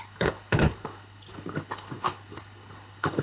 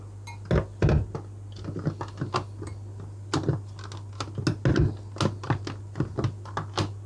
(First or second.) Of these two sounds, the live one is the second